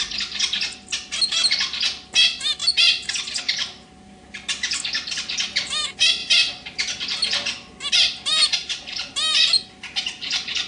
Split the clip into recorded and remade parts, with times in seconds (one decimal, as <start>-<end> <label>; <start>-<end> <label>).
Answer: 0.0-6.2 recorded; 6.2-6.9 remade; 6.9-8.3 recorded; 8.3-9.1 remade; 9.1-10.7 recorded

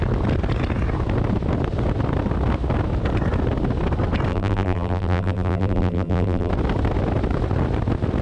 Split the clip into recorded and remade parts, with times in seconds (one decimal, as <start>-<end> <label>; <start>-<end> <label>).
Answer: 0.0-4.3 recorded; 4.3-6.5 remade; 6.5-8.2 recorded

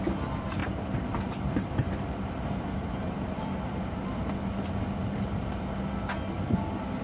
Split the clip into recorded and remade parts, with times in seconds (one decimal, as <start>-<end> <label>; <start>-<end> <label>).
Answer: 0.0-0.6 recorded; 0.6-4.2 remade; 4.2-7.0 recorded

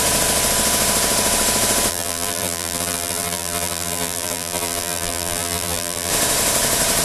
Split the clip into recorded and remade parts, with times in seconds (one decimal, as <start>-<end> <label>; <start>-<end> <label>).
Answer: 0.0-1.9 recorded; 1.9-6.1 remade; 6.1-7.0 recorded

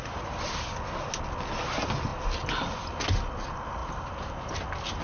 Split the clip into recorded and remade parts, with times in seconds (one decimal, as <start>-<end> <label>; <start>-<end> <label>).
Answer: 0.0-3.8 recorded; 3.8-4.5 remade; 4.5-5.0 recorded